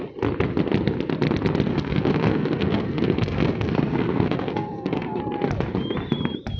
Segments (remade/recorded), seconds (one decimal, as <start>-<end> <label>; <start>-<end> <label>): 0.0-1.7 recorded; 1.7-5.2 remade; 5.2-6.6 recorded